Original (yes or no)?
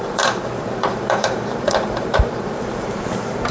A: no